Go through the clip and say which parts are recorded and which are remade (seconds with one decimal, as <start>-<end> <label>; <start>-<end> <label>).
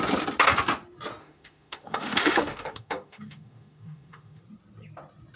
0.0-1.2 recorded; 1.2-4.4 remade; 4.4-5.4 recorded